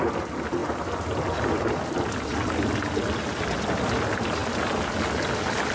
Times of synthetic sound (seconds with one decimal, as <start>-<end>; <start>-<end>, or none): none